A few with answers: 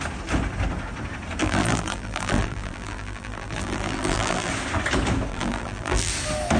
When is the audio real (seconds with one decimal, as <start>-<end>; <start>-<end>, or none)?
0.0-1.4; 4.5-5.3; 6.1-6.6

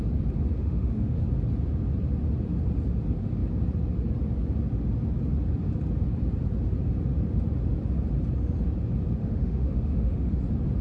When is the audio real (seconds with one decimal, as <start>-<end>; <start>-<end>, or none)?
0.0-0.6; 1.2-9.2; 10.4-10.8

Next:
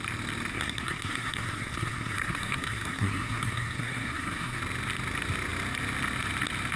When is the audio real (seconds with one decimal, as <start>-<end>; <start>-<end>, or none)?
0.0-0.5; 4.6-6.8

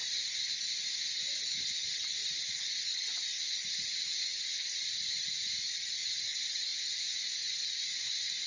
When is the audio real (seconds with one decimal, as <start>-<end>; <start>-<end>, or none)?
0.0-8.5

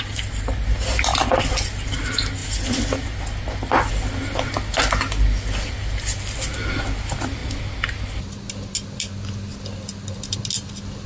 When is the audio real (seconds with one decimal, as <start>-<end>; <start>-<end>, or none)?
0.0-11.1

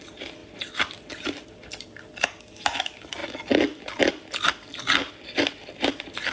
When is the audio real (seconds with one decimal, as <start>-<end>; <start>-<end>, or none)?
0.0-6.3

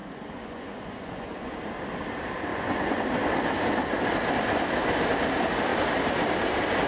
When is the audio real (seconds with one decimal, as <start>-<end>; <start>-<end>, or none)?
1.6-2.5; 3.0-6.9

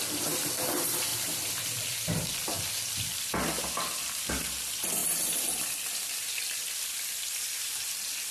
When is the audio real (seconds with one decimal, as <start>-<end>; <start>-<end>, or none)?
0.0-1.1; 3.6-5.0; 7.2-8.3